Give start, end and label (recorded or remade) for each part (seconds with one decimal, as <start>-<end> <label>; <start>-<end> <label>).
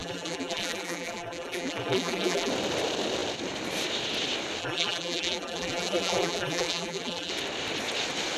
0.0-2.5 remade; 2.5-4.6 recorded; 4.6-7.3 remade; 7.3-8.4 recorded